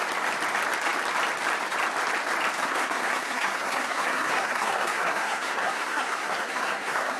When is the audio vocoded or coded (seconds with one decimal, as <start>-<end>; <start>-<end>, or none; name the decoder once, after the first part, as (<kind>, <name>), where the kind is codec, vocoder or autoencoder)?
2.6-7.2 (codec, SNAC)